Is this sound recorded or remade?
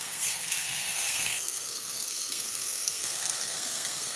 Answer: remade